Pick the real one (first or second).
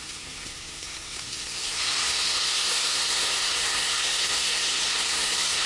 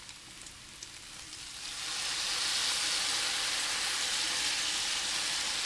second